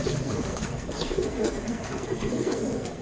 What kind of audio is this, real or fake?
fake